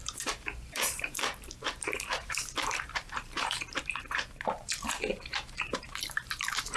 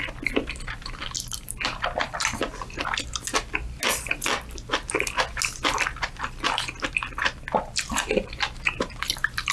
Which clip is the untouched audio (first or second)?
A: second